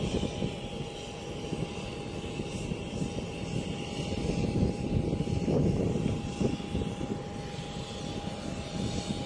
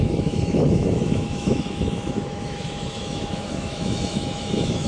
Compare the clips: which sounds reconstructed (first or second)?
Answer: second